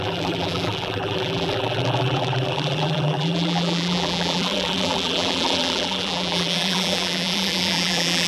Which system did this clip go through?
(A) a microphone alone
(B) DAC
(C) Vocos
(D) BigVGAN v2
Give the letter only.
D